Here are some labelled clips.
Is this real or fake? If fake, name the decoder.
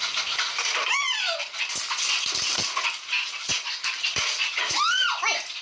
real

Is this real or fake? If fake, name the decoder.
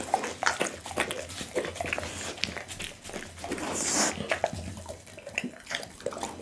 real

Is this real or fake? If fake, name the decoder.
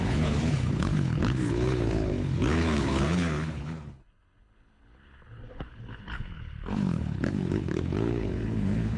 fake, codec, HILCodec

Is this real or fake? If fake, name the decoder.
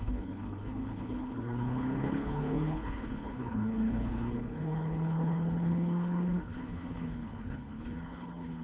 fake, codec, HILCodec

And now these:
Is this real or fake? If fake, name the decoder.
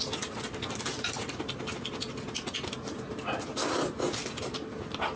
real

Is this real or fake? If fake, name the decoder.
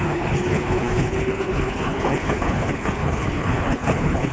fake, codec, HILCodec